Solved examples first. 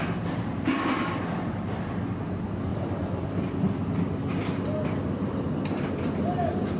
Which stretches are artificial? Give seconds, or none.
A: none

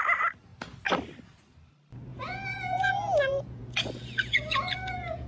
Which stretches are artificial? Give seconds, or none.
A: 2.1-5.3

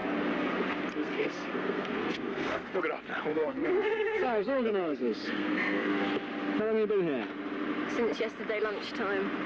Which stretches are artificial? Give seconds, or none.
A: 1.0-2.8; 3.3-6.0